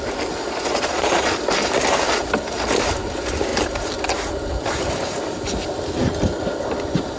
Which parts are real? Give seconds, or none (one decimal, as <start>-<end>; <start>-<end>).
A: 0.0-0.4; 1.3-7.2

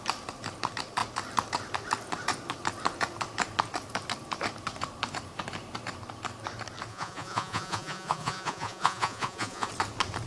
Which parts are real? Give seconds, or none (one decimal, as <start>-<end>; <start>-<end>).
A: 0.0-6.9; 9.7-10.3

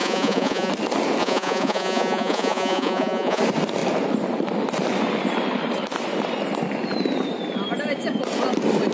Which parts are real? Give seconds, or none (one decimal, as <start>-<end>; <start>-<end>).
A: 0.7-1.2; 3.4-8.9

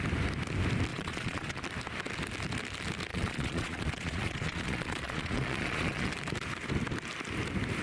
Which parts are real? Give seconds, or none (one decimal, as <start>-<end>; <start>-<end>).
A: 0.0-0.9; 1.6-3.1; 6.1-7.8

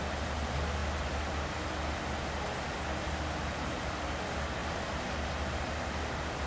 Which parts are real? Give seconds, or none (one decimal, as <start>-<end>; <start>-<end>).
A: 0.0-6.5

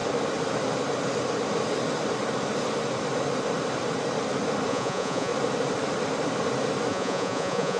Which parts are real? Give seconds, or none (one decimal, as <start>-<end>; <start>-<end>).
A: 0.0-4.7; 5.3-6.9